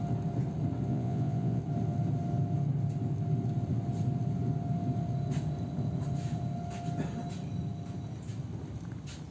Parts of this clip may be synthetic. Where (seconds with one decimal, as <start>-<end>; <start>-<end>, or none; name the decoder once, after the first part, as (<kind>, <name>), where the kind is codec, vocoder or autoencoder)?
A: 0.9-1.6 (vocoder, Vocos)